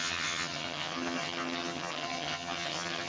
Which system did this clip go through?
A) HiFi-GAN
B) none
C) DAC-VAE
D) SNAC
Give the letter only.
A